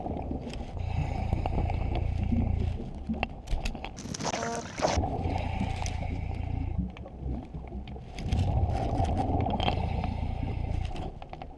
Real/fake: real